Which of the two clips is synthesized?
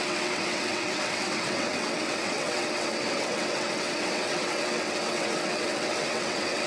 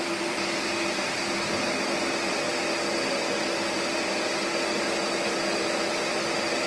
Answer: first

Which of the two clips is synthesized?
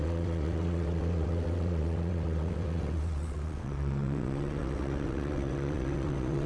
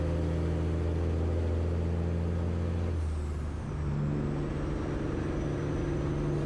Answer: first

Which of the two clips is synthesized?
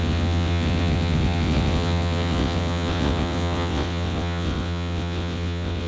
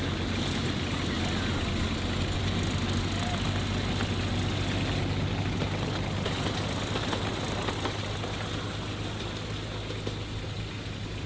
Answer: first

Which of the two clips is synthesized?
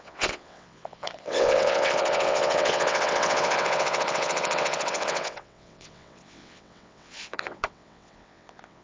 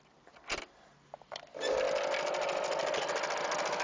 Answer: first